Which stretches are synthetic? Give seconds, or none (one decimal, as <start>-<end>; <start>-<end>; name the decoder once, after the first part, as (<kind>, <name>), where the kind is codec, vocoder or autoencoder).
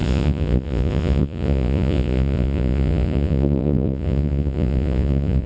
0.0-5.5 (vocoder, Vocos)